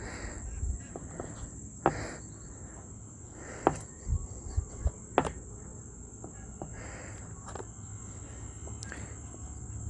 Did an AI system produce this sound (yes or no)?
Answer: no